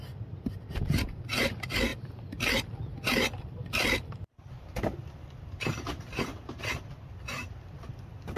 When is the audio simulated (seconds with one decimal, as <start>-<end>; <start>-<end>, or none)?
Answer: none